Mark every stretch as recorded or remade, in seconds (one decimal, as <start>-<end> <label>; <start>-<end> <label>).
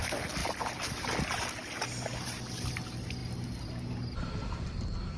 0.0-5.2 recorded